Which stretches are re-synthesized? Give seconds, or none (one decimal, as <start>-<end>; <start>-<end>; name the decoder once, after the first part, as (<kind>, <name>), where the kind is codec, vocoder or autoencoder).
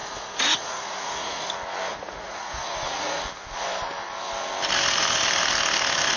0.0-1.5 (vocoder, Vocos); 1.9-3.2